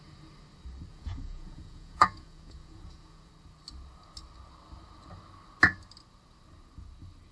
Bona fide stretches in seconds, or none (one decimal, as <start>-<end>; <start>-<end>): 0.0-0.9; 3.3-7.3

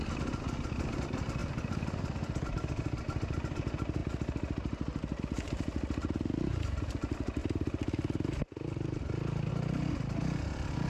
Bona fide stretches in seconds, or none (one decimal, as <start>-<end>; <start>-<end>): 0.0-1.4; 2.0-10.9

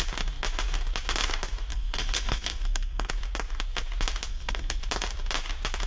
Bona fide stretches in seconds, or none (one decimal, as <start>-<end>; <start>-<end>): 0.0-1.7; 3.1-4.3; 4.8-5.9

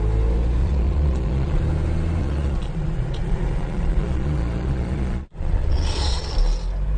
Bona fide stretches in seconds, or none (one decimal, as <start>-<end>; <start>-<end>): 0.0-0.6; 1.6-2.2; 6.3-7.0